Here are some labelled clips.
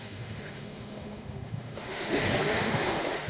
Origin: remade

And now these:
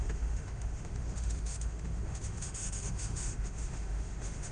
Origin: remade